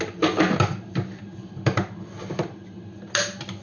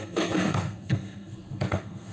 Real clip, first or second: first